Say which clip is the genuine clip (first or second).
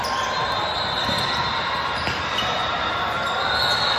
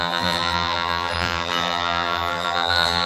first